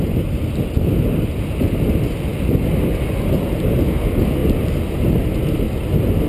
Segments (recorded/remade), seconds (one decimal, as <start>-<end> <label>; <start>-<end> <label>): 0.0-4.4 recorded; 4.4-5.1 remade; 5.1-6.3 recorded